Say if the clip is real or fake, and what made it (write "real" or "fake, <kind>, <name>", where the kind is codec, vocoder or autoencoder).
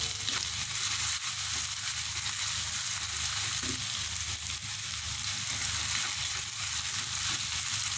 real